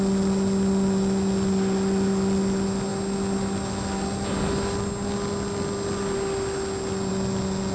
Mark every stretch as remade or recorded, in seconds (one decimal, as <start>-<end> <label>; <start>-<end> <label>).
0.0-7.7 recorded